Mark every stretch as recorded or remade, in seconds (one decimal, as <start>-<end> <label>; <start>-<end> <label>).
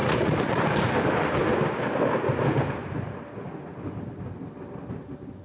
0.0-0.6 remade; 0.6-5.4 recorded